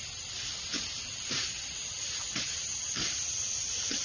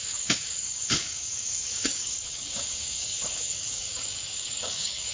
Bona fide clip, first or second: first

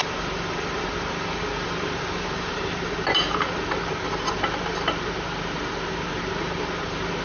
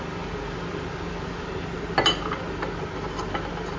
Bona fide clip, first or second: second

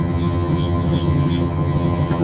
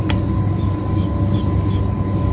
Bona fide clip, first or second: second